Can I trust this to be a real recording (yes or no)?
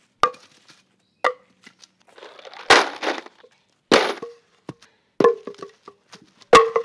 yes